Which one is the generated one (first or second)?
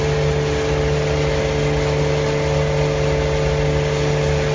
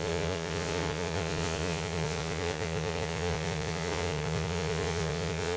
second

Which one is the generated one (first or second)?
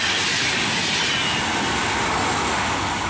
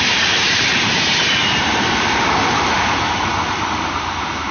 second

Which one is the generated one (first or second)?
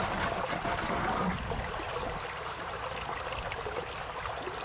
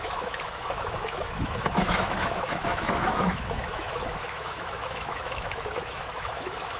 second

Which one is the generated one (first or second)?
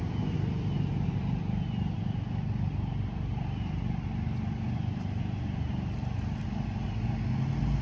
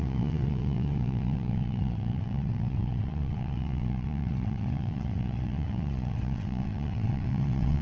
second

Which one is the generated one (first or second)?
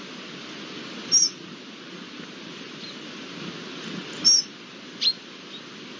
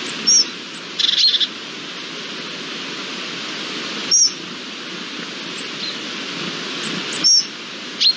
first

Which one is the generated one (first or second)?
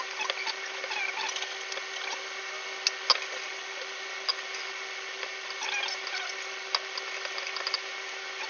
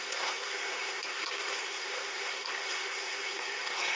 second